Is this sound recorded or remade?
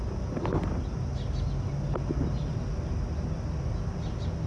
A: recorded